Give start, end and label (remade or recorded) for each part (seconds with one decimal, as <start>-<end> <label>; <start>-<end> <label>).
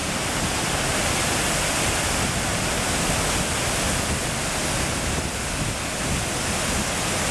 0.0-7.3 recorded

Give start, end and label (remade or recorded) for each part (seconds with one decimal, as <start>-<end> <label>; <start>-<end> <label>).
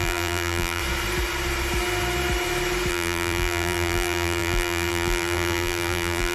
0.0-0.8 remade; 0.8-2.9 recorded; 2.9-6.3 remade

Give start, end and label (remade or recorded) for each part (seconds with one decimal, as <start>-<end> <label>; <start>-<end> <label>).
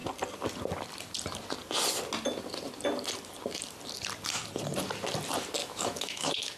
0.0-5.6 recorded; 5.6-6.6 remade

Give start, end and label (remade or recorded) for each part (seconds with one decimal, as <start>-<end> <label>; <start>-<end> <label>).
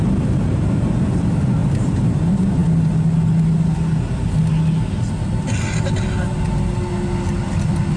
0.0-1.6 recorded; 1.6-2.2 remade; 2.2-8.0 recorded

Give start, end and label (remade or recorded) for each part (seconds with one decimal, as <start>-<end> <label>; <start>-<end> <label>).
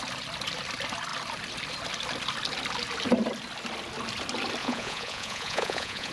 0.0-4.6 recorded; 4.6-6.1 remade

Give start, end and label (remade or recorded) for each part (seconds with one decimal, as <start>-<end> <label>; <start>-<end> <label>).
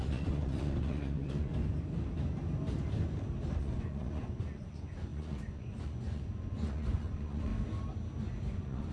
0.0-1.5 remade; 1.5-3.6 recorded; 3.6-7.5 remade; 7.5-8.5 recorded; 8.5-8.9 remade